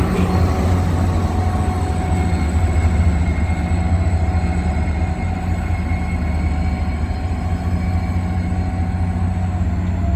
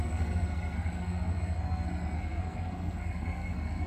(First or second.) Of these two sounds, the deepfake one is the second